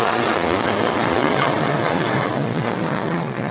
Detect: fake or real fake